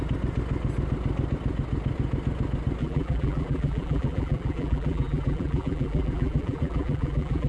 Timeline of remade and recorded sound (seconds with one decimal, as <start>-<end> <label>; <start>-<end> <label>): 0.0-2.8 recorded; 2.8-7.5 remade